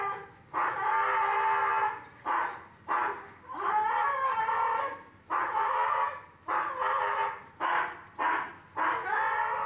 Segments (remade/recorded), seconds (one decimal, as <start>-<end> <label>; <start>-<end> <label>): 0.0-9.7 recorded